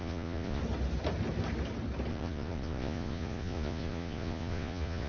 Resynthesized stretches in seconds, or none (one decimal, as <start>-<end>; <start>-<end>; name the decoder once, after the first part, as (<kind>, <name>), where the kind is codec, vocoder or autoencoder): 0.0-0.6 (vocoder, Vocos); 2.1-5.1